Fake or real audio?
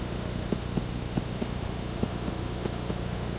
fake